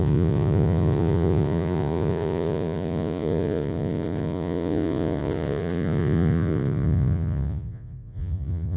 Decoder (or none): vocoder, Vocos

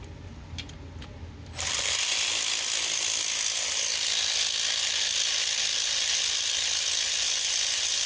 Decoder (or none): none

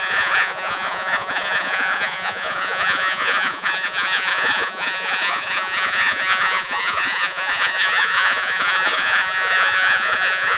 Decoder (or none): vocoder, Vocos